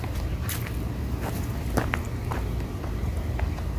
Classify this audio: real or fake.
real